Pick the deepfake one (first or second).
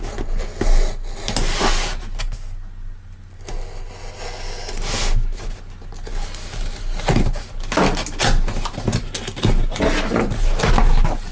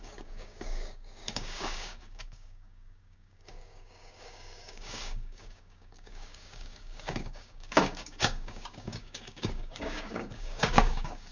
second